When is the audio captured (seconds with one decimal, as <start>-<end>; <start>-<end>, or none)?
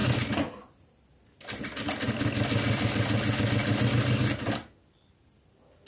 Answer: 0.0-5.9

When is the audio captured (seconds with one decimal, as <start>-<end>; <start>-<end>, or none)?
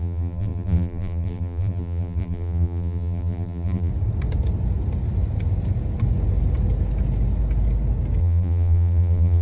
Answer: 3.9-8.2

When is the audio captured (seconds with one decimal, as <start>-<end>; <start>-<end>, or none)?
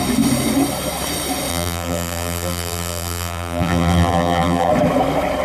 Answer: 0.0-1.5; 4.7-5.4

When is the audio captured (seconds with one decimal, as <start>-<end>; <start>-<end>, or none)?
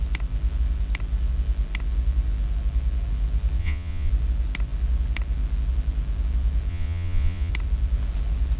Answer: 0.0-3.6; 4.1-6.7; 7.5-8.6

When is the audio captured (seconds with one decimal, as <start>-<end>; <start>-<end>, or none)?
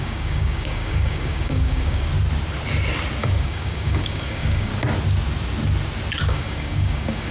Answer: 2.1-3.2; 4.7-6.3